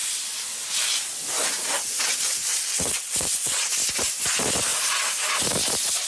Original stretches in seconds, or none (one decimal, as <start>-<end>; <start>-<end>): 0.0-2.5; 3.7-6.1

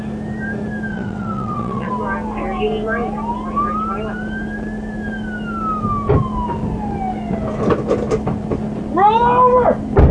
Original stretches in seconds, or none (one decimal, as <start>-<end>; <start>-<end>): 0.0-0.9; 1.9-10.1

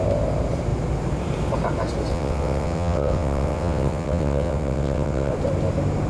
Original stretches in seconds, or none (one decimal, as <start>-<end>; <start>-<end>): 0.0-2.1; 5.3-6.1

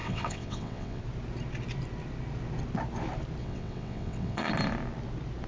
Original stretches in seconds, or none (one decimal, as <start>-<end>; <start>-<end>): 1.0-3.4; 4.5-5.5